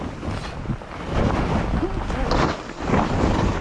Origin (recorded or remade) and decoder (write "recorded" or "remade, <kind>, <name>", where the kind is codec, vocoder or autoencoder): recorded